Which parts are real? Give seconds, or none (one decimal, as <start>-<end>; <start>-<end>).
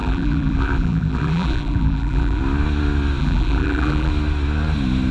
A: 2.4-3.2; 4.1-5.1